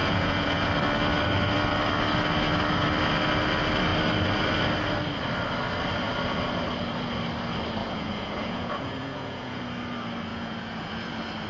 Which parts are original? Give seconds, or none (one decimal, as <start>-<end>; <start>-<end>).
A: 0.7-7.8; 9.6-10.3; 11.1-11.5